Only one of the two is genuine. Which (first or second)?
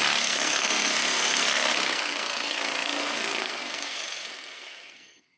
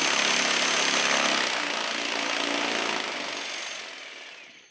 second